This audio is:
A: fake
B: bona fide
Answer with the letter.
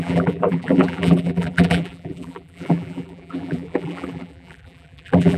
A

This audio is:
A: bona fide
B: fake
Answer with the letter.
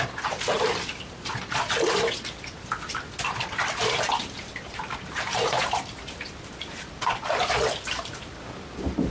A